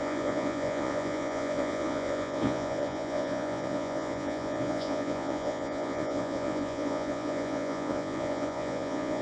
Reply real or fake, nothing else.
fake